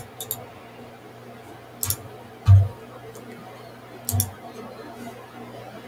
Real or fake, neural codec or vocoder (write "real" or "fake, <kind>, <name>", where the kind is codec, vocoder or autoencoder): real